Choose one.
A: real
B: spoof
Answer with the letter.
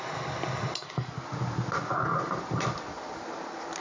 A